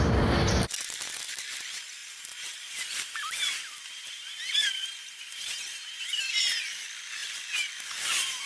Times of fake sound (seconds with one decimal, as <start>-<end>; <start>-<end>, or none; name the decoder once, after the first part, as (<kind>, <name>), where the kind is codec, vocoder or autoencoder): 2.0-6.2 (vocoder, BigVGAN v2)